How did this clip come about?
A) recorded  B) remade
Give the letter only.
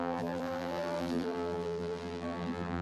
B